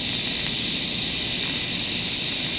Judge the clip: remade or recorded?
recorded